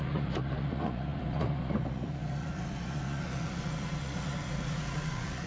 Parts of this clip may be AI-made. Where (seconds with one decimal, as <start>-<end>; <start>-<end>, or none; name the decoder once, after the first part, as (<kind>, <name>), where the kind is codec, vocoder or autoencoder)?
0.0-5.5 (vocoder, Vocos)